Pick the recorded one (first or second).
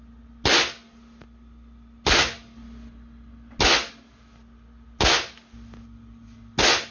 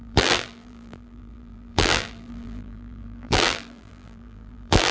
first